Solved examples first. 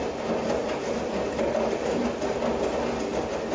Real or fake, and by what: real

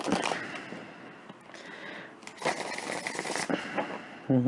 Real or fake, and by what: real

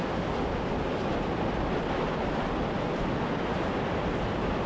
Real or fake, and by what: real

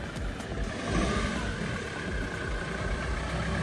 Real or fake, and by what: real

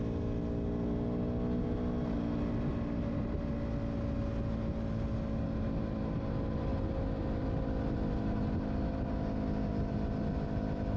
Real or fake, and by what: real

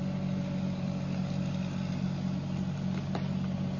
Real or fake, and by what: real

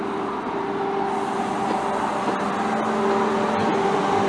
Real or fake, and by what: real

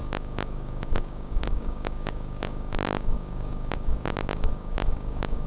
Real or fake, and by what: fake, codec, DAC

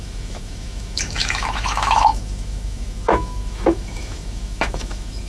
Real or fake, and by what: fake, autoencoder, DAC-VAE